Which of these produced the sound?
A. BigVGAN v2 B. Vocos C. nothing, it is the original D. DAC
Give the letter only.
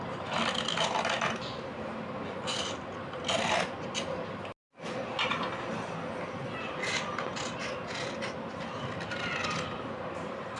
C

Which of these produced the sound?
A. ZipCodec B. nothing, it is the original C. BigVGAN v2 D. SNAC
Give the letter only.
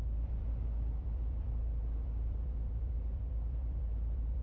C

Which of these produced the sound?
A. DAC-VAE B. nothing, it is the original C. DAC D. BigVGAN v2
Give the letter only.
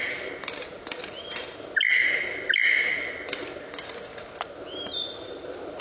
B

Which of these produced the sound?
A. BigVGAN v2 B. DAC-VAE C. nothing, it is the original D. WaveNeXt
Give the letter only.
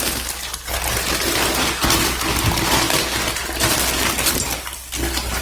C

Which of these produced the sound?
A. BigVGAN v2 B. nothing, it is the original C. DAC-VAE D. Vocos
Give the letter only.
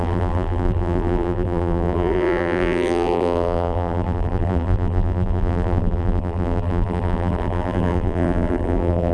A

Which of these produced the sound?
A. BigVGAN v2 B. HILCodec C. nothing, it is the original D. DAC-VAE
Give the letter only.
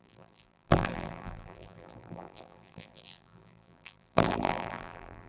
A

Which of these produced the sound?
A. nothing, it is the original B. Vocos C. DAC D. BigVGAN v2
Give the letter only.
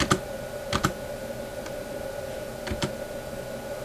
A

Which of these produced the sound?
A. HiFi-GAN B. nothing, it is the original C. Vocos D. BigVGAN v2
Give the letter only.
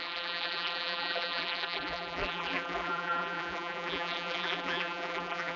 D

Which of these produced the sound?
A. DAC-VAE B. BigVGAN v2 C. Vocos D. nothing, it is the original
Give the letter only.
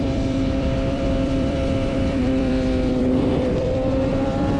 B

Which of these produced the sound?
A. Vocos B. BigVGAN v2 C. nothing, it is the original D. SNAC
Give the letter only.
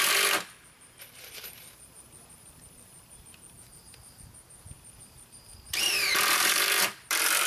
B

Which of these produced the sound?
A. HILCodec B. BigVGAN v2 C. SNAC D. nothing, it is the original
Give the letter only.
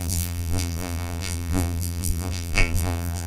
B